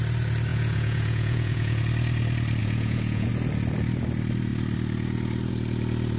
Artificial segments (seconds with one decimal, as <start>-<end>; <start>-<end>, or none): 0.5-1.8; 2.6-3.3